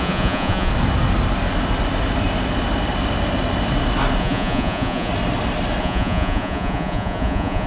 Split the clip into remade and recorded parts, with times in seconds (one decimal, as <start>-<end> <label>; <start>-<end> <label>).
0.0-0.7 remade; 0.7-4.2 recorded; 4.2-5.1 remade; 5.1-5.8 recorded; 5.8-7.7 remade